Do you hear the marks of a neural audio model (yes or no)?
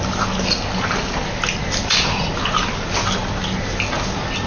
no